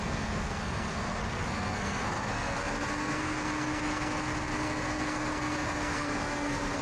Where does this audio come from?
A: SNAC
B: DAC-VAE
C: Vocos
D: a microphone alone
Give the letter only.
A